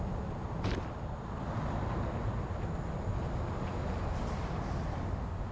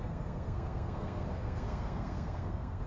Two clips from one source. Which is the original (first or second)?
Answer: first